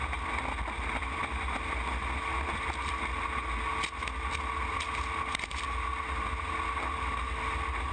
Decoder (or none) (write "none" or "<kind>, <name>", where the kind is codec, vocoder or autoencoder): none